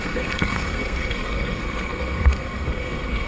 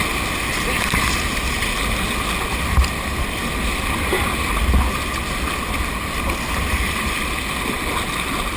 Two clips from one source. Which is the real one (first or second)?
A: second